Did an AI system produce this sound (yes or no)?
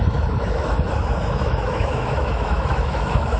yes